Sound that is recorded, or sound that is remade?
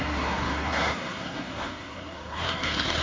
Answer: remade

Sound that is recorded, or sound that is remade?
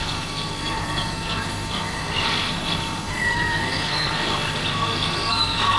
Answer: remade